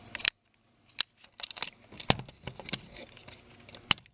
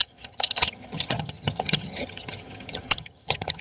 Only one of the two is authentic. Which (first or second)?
first